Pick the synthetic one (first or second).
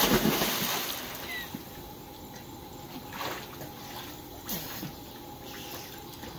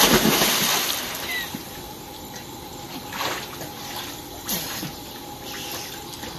second